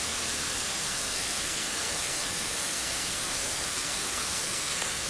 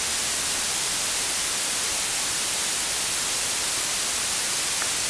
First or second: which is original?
second